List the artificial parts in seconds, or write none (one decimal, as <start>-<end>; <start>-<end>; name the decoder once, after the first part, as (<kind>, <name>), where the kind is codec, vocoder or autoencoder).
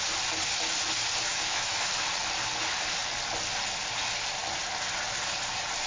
1.3-1.9 (autoencoder, DAC-VAE)